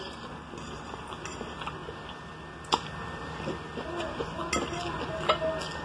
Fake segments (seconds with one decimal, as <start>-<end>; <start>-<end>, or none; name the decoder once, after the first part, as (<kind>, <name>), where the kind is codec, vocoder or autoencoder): none

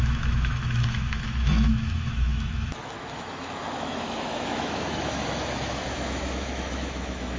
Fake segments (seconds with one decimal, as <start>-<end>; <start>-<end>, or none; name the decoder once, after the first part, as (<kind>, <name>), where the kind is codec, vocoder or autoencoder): 0.0-7.4 (autoencoder, DAC-VAE)

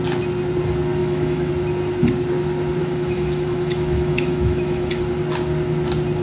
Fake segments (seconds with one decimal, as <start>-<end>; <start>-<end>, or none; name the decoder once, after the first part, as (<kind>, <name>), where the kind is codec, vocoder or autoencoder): 1.0-1.5 (autoencoder, DAC-VAE); 2.8-4.9